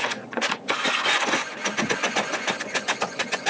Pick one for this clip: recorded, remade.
remade